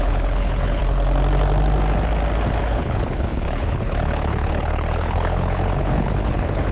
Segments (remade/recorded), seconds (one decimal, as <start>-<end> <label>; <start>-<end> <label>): 0.0-0.8 remade; 0.8-2.6 recorded; 2.6-6.7 remade